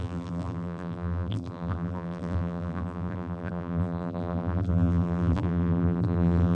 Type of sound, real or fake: fake